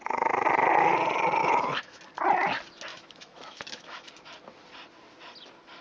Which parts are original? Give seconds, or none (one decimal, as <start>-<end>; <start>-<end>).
0.0-1.4; 2.0-2.9; 4.1-5.8